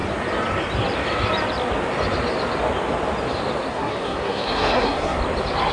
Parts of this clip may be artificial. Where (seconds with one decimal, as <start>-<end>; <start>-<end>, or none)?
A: 3.7-5.2